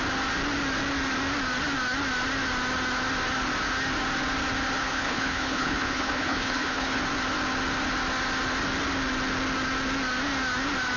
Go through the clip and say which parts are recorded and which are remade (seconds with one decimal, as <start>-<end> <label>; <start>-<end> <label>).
0.0-4.8 recorded; 4.8-7.0 remade; 7.0-11.0 recorded